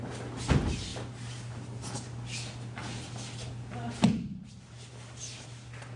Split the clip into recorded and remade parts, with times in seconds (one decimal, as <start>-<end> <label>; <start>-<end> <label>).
0.0-6.0 recorded